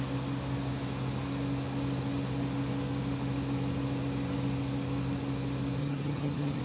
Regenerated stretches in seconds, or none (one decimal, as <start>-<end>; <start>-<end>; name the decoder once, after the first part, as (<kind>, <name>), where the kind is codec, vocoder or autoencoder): 5.8-6.6 (vocoder, HiFi-GAN)